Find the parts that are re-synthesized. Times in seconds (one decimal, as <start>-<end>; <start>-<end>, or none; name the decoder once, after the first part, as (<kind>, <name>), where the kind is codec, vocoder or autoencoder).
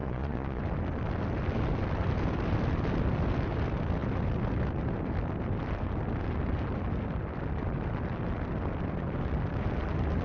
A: 0.0-0.6 (vocoder, Vocos)